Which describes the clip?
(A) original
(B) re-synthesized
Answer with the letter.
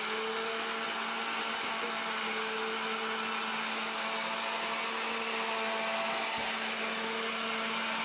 A